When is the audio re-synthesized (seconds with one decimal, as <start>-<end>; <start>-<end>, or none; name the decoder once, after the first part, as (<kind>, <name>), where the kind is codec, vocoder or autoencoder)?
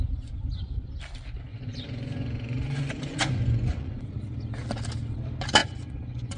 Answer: 1.5-4.1 (vocoder, Vocos); 5.6-6.4